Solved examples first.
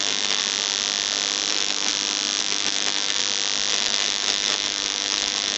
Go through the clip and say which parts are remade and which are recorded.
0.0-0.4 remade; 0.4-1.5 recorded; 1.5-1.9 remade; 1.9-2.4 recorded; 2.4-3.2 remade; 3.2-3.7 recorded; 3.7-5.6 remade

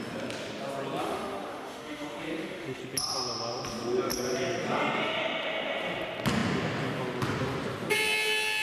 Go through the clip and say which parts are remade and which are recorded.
0.0-1.0 recorded; 1.0-2.8 remade; 2.8-8.6 recorded

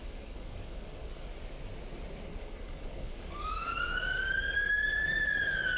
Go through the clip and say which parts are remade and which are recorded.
0.0-1.3 remade; 1.3-2.3 recorded; 2.3-5.8 remade